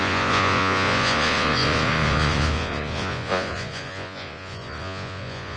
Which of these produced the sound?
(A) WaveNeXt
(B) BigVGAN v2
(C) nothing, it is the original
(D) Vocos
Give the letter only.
D